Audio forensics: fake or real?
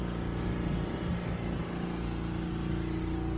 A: real